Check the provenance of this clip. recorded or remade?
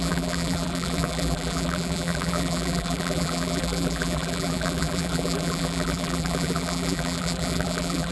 remade